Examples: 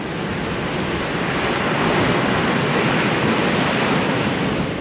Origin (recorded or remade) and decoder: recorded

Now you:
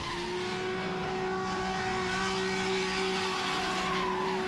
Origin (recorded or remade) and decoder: recorded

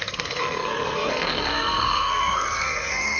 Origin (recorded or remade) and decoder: remade, codec, SNAC